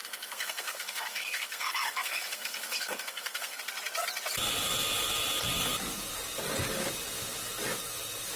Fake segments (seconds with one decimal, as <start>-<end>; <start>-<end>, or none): 0.0-3.6